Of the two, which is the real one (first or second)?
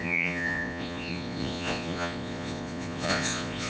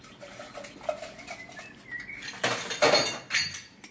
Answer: second